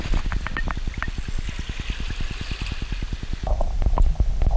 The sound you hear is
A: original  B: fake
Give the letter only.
A